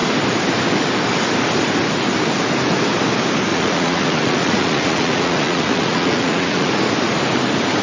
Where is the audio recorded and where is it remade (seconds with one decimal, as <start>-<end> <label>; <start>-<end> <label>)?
0.0-3.5 recorded; 3.5-6.7 remade; 6.7-7.8 recorded